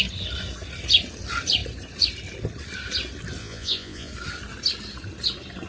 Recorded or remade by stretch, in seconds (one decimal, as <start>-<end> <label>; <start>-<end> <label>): 0.0-3.4 recorded; 3.4-4.1 remade; 4.1-5.7 recorded